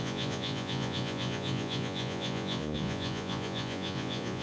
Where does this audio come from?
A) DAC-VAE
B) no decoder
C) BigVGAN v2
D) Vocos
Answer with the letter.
D